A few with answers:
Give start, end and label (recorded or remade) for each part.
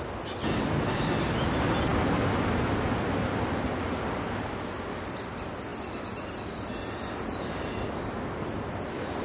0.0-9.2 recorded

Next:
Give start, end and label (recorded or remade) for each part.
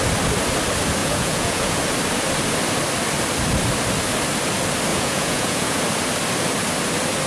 0.0-1.0 recorded; 1.0-1.8 remade; 1.8-4.9 recorded; 4.9-5.8 remade; 5.8-7.3 recorded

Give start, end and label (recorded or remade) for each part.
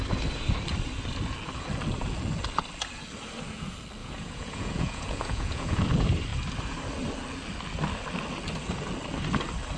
0.0-4.0 recorded; 4.0-5.8 remade; 5.8-9.8 recorded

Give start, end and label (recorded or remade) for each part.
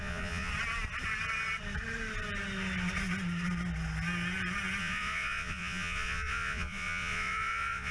0.0-0.5 remade; 0.5-4.8 recorded; 4.8-7.9 remade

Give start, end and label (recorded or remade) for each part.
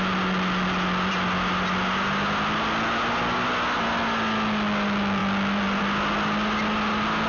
0.0-7.3 recorded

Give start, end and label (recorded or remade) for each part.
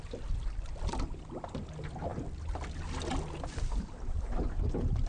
0.0-5.1 recorded